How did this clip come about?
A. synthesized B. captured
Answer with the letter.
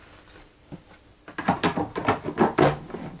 B